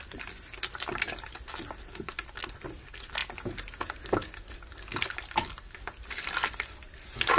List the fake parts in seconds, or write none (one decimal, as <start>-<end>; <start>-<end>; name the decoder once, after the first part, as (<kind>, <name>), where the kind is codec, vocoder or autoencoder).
none

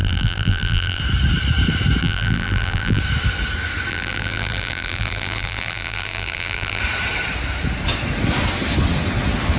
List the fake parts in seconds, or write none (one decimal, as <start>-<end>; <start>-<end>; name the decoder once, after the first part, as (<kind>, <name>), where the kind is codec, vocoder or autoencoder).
0.0-1.0 (vocoder, BigVGAN v2); 2.0-3.0; 3.9-6.8